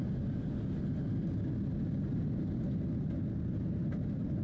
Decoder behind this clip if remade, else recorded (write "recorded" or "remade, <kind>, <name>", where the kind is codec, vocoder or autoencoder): recorded